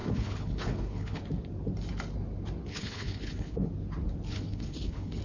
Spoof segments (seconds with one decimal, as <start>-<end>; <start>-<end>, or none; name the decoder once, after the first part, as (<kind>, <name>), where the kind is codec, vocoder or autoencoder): 0.0-1.2 (codec, HILCodec); 2.7-3.7; 4.3-5.2